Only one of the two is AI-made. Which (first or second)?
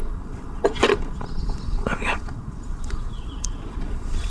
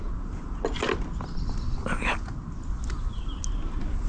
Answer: first